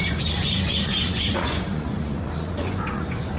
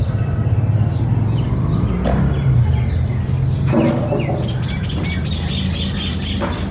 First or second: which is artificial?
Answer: first